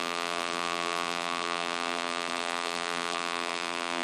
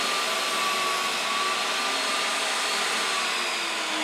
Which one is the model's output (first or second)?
first